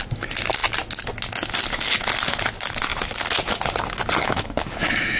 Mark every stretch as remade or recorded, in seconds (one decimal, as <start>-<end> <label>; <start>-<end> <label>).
0.0-4.2 recorded; 4.2-5.2 remade